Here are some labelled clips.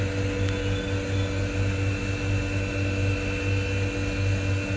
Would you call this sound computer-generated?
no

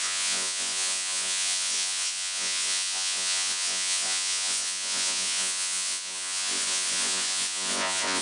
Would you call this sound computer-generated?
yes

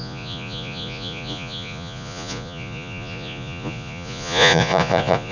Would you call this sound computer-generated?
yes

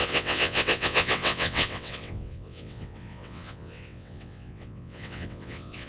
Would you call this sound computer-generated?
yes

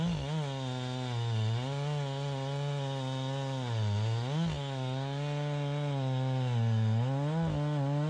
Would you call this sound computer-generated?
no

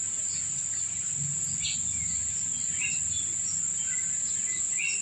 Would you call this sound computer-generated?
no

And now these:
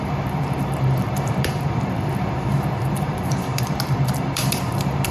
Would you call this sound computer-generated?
yes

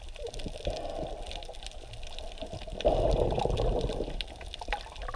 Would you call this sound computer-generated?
no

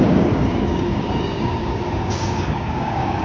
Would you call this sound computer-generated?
yes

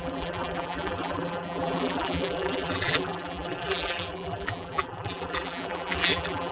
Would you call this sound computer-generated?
yes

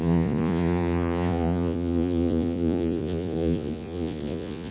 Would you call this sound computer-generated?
yes